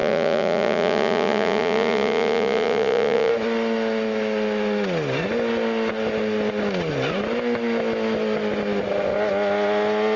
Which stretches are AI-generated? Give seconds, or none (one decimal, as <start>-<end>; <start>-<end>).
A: 0.0-3.3